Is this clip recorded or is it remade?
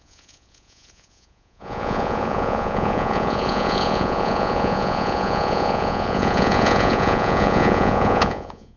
remade